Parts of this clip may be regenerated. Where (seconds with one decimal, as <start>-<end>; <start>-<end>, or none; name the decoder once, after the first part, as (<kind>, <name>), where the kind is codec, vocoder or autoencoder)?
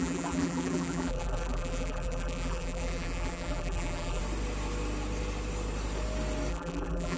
0.0-4.2 (vocoder, BigVGAN v2); 6.5-7.2